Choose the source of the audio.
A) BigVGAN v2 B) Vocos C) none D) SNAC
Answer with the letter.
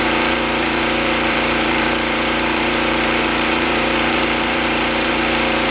A